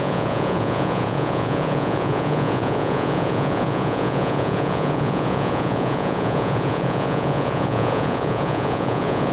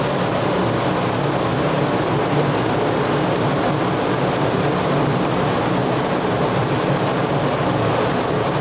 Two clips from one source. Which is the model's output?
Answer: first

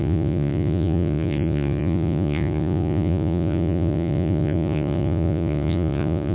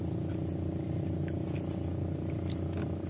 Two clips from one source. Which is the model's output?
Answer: first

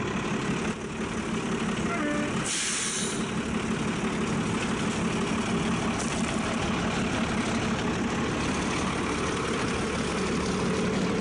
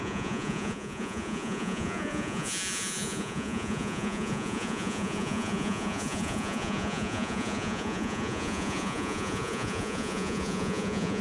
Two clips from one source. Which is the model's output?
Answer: second